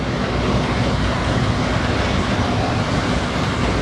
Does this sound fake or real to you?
real